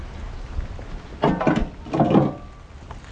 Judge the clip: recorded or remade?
recorded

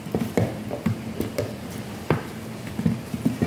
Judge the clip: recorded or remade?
recorded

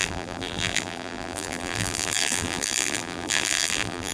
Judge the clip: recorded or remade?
remade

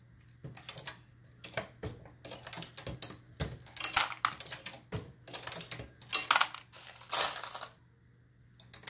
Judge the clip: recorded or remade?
recorded